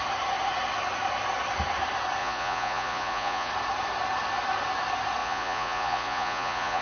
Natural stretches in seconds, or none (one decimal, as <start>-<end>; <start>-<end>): 0.0-2.2; 3.5-5.2